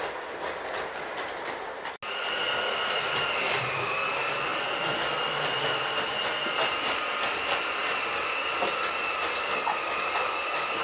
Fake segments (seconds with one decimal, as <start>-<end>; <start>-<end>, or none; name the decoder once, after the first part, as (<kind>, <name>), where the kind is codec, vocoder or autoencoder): none